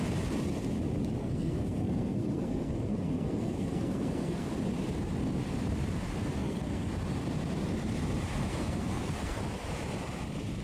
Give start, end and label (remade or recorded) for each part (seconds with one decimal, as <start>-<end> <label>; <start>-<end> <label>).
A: 0.0-1.2 recorded; 1.2-4.5 remade; 4.5-6.4 recorded; 6.4-6.9 remade; 6.9-8.5 recorded; 8.5-9.4 remade; 9.4-10.6 recorded